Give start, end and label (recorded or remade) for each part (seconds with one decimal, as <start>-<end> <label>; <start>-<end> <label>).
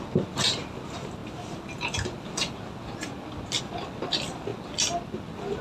0.0-5.6 recorded